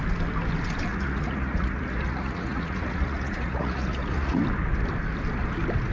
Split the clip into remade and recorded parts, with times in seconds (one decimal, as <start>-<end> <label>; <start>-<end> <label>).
0.0-0.9 recorded; 0.9-4.4 remade; 4.4-5.9 recorded